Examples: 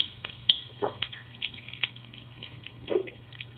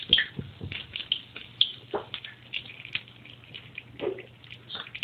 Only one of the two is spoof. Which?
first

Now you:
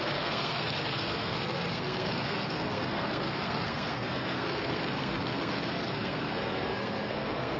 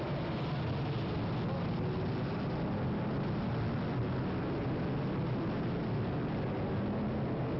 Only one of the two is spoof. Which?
first